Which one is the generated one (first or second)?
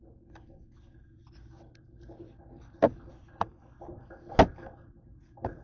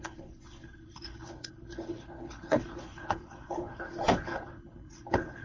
second